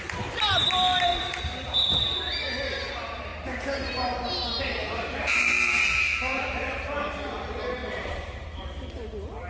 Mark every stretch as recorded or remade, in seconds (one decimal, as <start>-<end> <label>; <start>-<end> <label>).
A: 0.0-1.1 remade; 1.1-2.9 recorded; 2.9-3.3 remade; 3.3-4.6 recorded; 4.6-9.5 remade